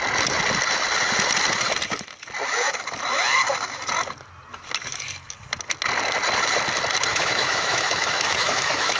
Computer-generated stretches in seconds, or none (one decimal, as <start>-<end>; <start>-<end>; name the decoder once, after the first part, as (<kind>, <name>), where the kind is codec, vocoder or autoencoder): 7.1-9.0 (autoencoder, DAC-VAE)